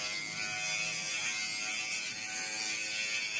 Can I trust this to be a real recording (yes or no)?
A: yes